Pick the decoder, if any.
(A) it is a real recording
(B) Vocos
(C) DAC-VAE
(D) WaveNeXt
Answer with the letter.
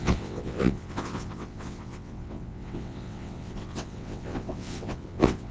D